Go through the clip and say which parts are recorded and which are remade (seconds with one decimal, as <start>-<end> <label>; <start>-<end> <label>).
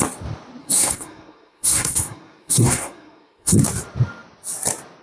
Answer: 0.0-0.6 recorded; 0.6-3.6 remade; 3.6-5.0 recorded